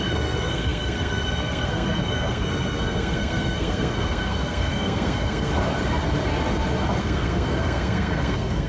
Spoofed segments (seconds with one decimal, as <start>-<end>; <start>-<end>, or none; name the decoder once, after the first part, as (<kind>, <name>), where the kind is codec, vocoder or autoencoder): 0.0-5.5 (codec, SNAC); 7.0-8.7